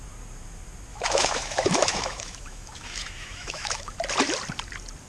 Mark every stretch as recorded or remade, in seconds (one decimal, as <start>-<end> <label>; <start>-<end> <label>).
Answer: 0.0-0.9 recorded; 0.9-4.0 remade; 4.0-5.1 recorded